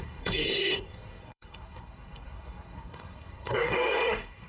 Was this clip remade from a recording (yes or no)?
yes